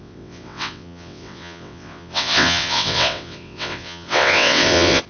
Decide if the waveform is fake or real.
fake